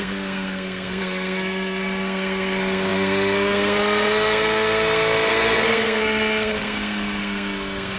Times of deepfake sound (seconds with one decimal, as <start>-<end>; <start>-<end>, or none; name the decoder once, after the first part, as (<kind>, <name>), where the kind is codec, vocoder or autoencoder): 0.0-8.0 (codec, SNAC)